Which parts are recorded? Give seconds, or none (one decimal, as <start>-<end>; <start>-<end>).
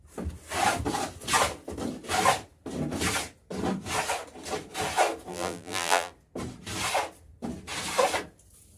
0.0-5.3; 6.1-8.8